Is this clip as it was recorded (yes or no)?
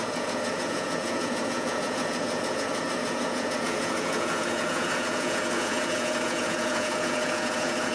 no